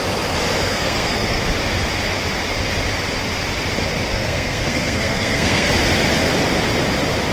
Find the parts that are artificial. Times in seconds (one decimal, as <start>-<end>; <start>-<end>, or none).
0.6-1.4; 4.1-5.8